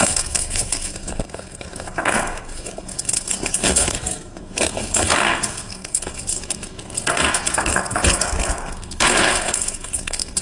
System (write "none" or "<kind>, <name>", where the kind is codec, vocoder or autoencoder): codec, SNAC